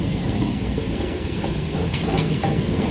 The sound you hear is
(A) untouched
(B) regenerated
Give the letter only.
B